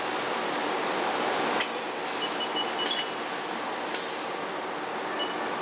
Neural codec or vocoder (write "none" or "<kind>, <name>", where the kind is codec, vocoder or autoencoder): none